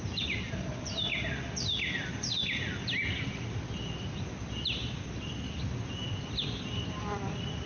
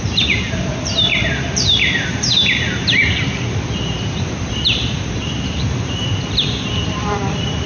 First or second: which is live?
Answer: first